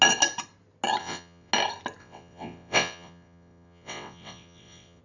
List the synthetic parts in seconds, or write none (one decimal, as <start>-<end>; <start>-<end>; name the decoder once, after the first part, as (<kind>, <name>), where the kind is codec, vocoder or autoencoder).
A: 1.0-1.5 (vocoder, WaveNeXt); 2.0-5.0